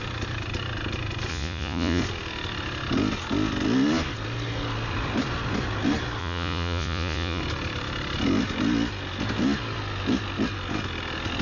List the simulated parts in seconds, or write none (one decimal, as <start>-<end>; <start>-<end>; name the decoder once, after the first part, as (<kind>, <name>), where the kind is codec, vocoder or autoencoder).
1.3-2.0 (vocoder, Vocos); 6.2-7.4